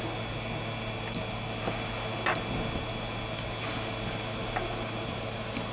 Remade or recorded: recorded